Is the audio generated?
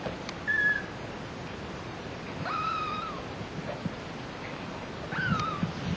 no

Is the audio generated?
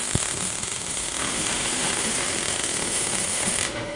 yes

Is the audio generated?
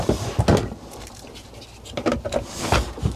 no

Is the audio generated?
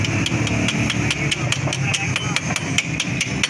no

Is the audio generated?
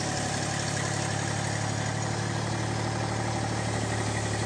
no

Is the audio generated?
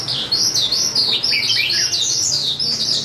no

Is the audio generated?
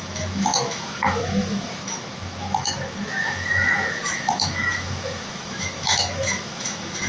yes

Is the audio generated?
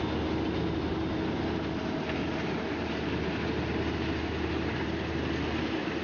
no